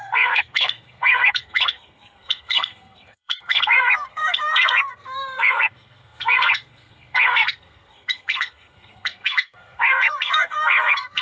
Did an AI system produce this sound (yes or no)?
yes